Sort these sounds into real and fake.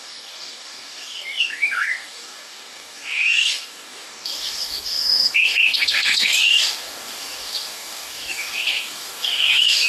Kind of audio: fake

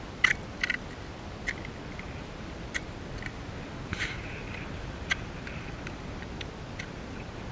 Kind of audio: real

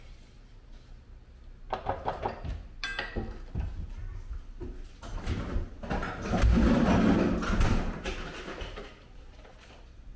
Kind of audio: real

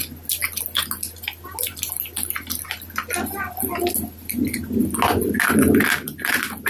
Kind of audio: real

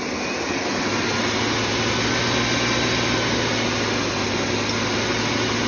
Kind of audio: real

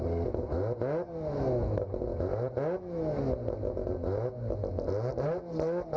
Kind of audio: real